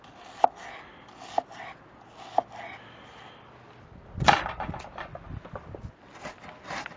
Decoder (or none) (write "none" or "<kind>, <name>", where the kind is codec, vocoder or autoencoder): none